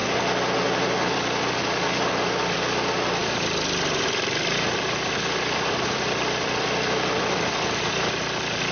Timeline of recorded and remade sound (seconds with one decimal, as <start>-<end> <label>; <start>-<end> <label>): 0.0-3.2 recorded; 3.2-8.2 remade; 8.2-8.7 recorded